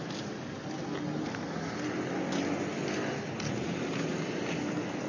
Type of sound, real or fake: real